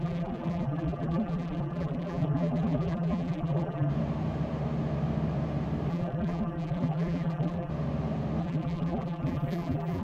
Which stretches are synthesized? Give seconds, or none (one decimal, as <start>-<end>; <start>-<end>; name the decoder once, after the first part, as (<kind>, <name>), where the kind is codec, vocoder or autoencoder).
0.0-3.9 (vocoder, BigVGAN v2); 5.9-7.7; 8.4-10.0